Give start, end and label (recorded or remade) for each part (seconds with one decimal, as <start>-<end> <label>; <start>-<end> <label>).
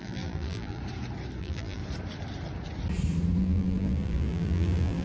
0.0-0.8 remade; 0.8-1.4 recorded; 1.4-1.8 remade; 1.8-3.4 recorded; 3.4-5.0 remade